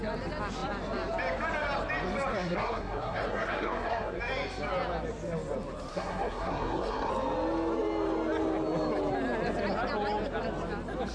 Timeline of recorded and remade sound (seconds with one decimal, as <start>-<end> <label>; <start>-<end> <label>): 0.0-2.3 recorded; 2.3-4.2 remade; 4.2-5.9 recorded; 5.9-7.1 remade; 7.1-11.1 recorded